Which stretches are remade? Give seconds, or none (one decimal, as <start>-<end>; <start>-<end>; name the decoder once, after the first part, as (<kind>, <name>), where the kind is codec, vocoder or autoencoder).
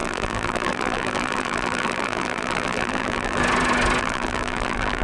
0.0-3.4 (vocoder, BigVGAN v2); 4.0-5.0